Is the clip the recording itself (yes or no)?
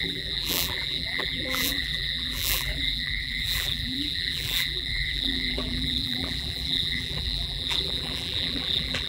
no